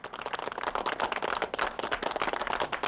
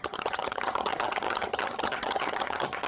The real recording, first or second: first